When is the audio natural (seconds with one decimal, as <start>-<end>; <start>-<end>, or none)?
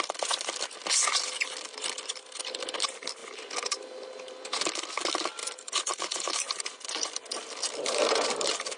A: 0.0-5.4; 6.6-8.8